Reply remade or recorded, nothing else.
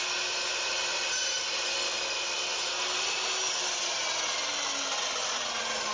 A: recorded